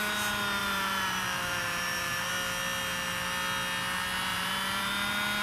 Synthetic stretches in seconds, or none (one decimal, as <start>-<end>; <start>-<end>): 0.6-2.3; 4.3-4.9